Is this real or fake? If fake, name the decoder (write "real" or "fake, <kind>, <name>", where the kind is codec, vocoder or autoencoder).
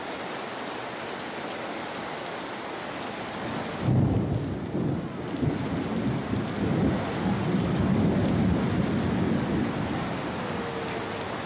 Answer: real